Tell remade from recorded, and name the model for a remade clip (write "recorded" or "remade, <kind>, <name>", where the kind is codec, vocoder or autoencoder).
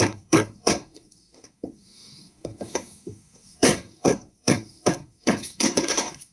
remade, codec, SNAC